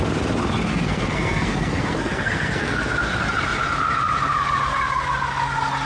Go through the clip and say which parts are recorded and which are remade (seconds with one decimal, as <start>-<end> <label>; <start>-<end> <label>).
0.0-0.7 recorded; 0.7-2.8 remade; 2.8-5.9 recorded